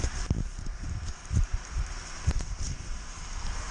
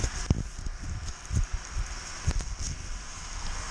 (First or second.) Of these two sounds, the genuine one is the second